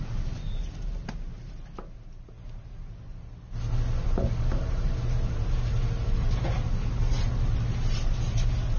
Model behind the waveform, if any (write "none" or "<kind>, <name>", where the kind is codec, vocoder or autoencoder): none